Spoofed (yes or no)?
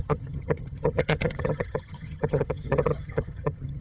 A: yes